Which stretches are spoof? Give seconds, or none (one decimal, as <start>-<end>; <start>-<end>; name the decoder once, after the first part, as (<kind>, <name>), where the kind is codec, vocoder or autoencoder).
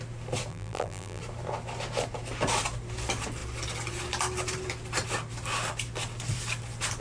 0.5-1.2 (vocoder, BigVGAN v2)